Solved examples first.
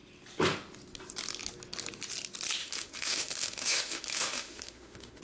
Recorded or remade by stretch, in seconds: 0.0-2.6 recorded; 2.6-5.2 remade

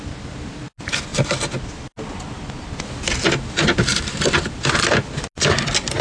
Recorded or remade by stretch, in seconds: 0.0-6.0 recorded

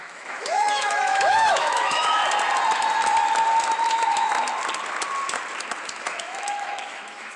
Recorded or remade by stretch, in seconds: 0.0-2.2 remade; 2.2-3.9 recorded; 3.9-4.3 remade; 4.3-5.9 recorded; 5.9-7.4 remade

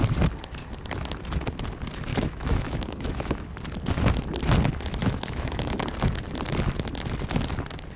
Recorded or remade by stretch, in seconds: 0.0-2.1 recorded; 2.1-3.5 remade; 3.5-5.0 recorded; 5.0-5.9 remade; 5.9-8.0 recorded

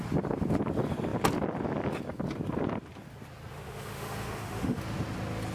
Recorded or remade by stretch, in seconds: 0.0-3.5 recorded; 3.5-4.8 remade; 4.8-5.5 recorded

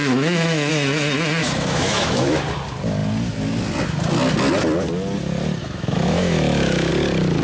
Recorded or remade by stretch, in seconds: 0.0-0.7 remade; 0.7-1.4 recorded; 1.4-2.4 remade; 2.4-5.6 recorded; 5.6-6.9 remade; 6.9-7.4 recorded

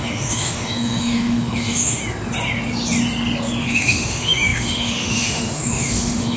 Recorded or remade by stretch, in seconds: 0.0-2.0 remade; 2.0-3.6 recorded; 3.6-6.4 remade

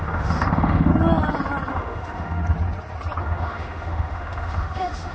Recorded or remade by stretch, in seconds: 0.0-0.9 remade; 0.9-1.7 recorded; 1.7-2.4 remade; 2.4-3.2 recorded; 3.2-5.1 remade